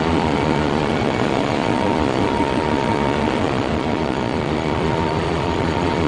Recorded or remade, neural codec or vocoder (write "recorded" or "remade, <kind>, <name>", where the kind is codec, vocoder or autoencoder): remade, vocoder, Vocos